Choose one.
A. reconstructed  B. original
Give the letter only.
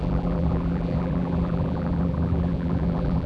A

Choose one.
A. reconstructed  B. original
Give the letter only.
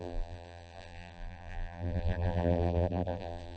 A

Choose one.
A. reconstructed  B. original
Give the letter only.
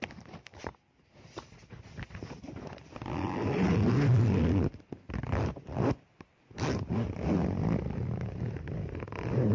A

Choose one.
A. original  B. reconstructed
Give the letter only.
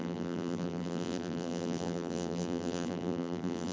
B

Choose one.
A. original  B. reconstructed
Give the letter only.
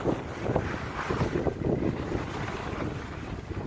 A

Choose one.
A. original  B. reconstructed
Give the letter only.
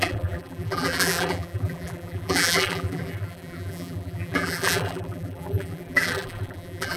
B